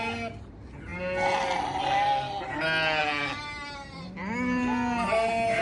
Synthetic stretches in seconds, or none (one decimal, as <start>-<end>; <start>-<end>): none